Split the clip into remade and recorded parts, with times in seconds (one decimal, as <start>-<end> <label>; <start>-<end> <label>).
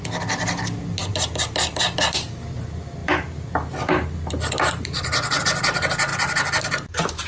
0.0-7.3 recorded